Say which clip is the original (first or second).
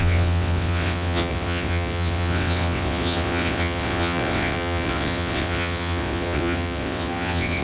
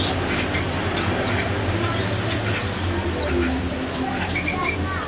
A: second